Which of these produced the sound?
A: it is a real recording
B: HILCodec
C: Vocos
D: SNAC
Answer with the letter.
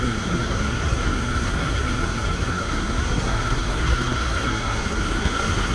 D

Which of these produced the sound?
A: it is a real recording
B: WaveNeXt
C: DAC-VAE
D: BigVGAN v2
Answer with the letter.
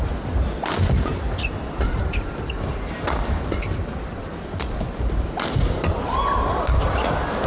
D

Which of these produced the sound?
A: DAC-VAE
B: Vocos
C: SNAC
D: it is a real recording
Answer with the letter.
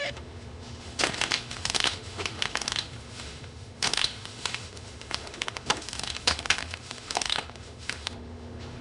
A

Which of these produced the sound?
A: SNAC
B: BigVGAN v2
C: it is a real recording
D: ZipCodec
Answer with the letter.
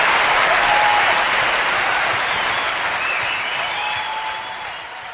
C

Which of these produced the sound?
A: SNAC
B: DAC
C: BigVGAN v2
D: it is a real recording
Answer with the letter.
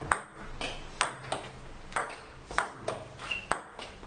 D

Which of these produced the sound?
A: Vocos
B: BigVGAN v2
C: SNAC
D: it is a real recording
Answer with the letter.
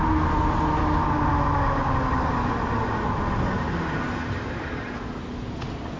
D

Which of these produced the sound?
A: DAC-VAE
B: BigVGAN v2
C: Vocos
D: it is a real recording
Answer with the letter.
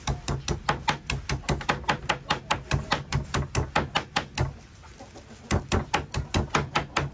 D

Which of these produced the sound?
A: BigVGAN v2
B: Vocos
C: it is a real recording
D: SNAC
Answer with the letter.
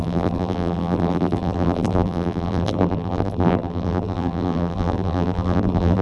A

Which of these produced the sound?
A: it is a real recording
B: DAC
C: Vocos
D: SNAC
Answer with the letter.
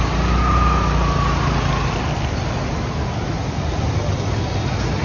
A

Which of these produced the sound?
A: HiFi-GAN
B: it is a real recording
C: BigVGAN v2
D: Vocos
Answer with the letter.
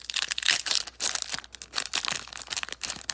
B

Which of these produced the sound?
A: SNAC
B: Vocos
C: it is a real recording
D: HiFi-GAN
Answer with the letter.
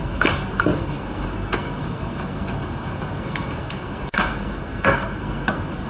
A